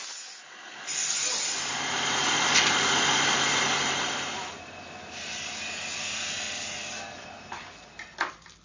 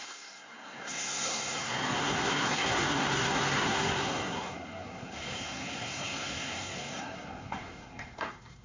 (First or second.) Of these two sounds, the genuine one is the first